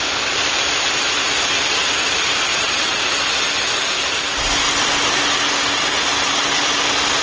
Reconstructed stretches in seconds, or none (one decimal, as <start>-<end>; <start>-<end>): 2.5-3.0